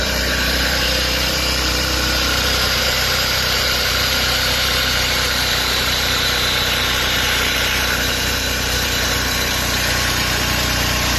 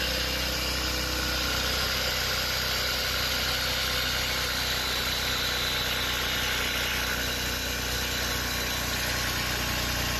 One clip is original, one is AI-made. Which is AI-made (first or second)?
first